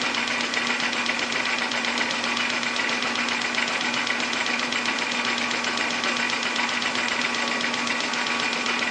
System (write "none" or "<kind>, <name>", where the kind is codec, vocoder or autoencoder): none